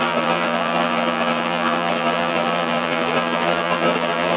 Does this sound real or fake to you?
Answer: fake